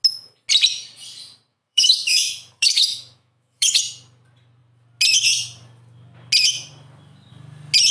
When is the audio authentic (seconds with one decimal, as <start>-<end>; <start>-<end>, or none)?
0.0-1.5; 3.8-7.9